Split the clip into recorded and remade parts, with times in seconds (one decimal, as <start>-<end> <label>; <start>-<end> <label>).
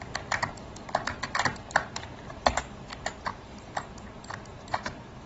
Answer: 0.0-5.3 recorded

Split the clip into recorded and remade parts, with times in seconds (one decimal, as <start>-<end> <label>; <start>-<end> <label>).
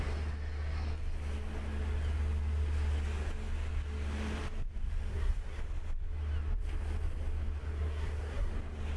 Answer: 0.0-5.1 recorded; 5.1-5.6 remade; 5.6-7.6 recorded; 7.6-8.5 remade; 8.5-9.0 recorded